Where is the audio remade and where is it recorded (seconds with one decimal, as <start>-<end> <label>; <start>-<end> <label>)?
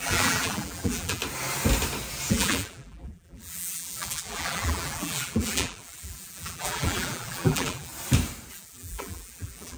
0.0-1.2 remade; 1.2-2.3 recorded; 2.3-7.9 remade; 7.9-8.5 recorded; 8.5-9.8 remade